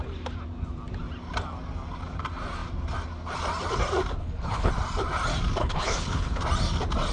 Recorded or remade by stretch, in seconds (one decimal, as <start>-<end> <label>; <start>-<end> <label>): 0.0-4.2 recorded; 4.2-4.7 remade; 4.7-5.6 recorded; 5.6-6.4 remade; 6.4-7.1 recorded